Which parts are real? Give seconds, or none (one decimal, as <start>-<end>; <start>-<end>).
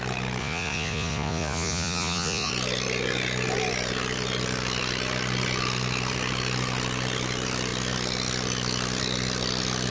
0.0-0.4; 2.5-9.9